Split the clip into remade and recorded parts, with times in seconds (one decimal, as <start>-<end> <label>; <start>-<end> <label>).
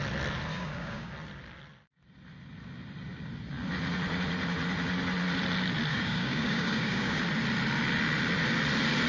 0.0-0.5 recorded; 0.5-1.1 remade; 1.1-5.9 recorded; 5.9-7.2 remade; 7.2-9.1 recorded